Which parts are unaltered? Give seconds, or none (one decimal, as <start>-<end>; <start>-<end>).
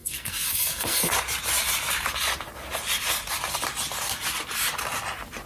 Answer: 1.1-5.5